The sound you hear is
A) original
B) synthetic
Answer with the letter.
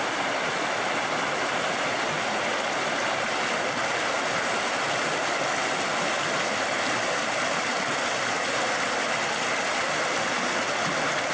A